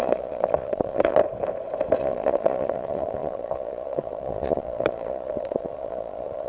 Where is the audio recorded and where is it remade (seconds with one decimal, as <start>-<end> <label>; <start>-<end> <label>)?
0.0-1.2 remade; 1.2-2.0 recorded; 2.0-6.5 remade